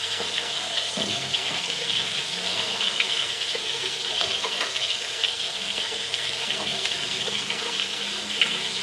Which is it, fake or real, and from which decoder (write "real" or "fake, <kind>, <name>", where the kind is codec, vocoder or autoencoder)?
fake, codec, SNAC